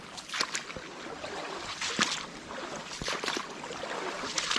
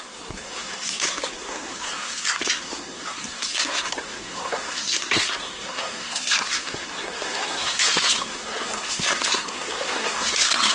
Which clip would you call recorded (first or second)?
first